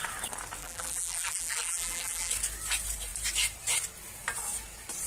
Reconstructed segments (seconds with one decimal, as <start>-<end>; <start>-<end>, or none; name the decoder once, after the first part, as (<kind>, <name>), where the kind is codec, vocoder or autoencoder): 0.6-2.3 (vocoder, BigVGAN v2)